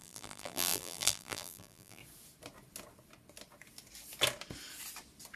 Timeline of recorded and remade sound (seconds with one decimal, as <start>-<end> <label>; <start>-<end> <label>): 0.0-2.0 remade; 2.0-5.4 recorded